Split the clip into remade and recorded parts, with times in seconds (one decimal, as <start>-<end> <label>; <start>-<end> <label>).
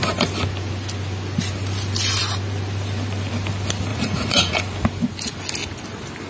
0.0-3.9 recorded; 3.9-4.6 remade; 4.6-6.3 recorded